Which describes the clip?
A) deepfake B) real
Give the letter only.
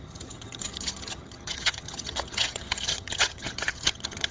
A